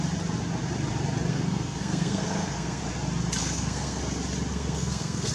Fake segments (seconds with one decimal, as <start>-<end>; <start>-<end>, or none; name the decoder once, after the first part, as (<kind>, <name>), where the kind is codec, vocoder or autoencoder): 1.3-2.8 (codec, SNAC); 3.4-4.0; 4.5-5.3